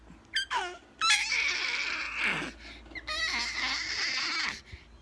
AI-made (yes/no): no